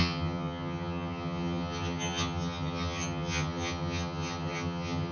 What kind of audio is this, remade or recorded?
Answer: remade